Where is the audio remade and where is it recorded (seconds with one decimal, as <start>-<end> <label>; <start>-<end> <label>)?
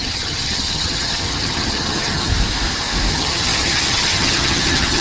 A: 0.0-2.3 remade; 2.3-3.1 recorded; 3.1-5.0 remade